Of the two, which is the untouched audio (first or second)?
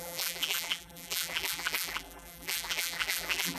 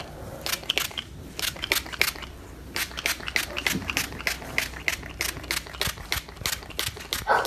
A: second